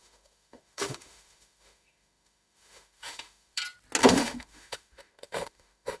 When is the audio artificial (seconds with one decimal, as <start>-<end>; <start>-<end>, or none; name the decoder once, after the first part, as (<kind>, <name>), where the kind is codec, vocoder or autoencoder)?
0.0-3.6 (autoencoder, DAC-VAE); 4.0-6.0